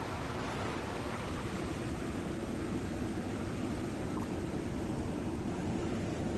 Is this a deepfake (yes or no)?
no